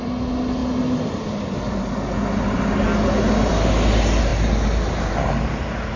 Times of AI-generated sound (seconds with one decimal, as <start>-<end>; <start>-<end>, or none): none